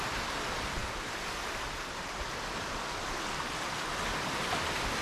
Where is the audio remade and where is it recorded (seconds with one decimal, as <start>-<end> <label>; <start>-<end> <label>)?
0.0-5.0 recorded